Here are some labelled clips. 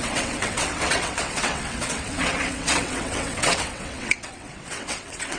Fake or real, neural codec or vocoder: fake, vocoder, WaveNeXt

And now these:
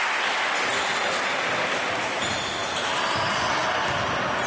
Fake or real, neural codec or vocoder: real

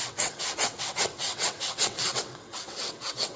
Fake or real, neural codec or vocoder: fake, vocoder, WaveNeXt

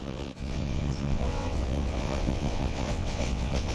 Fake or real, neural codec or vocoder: fake, vocoder, WaveNeXt